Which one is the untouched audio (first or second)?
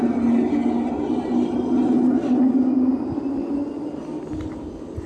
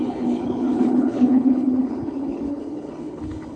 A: first